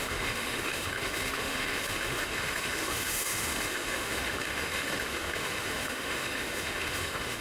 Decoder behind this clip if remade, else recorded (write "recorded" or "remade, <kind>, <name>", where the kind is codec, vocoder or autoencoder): remade, autoencoder, DAC-VAE